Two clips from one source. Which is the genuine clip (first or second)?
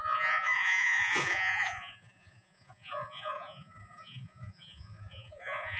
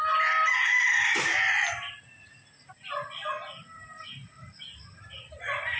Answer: second